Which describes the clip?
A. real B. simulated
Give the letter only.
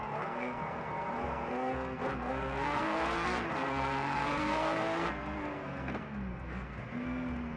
B